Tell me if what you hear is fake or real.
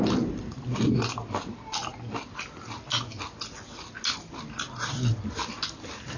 real